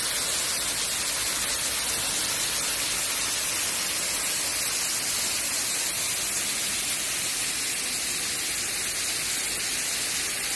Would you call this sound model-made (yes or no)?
no